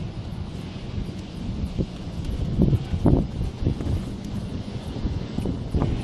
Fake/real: fake